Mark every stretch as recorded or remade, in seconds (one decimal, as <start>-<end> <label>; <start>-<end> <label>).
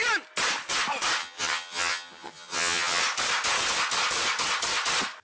0.0-1.2 recorded; 1.2-3.0 remade; 3.0-5.2 recorded